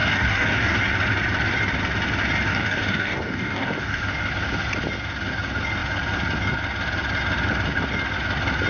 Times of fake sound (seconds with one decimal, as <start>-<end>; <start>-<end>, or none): 0.0-0.8; 2.5-4.0